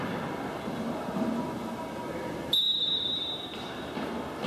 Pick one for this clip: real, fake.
real